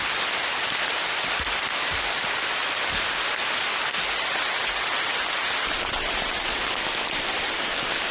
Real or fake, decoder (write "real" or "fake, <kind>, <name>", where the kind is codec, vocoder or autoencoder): real